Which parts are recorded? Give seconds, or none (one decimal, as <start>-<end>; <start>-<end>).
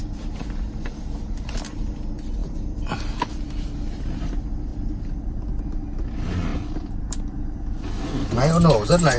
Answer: 0.0-2.4; 2.9-4.7; 5.6-9.2